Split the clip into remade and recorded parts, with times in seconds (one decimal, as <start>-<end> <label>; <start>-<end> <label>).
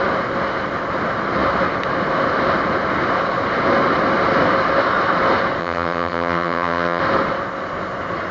0.0-5.6 recorded; 5.6-7.0 remade; 7.0-8.3 recorded